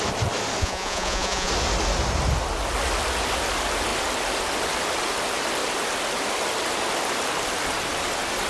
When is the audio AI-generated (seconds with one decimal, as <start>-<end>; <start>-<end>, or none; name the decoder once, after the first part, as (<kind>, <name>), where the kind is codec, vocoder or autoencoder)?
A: 0.6-1.5 (vocoder, Vocos)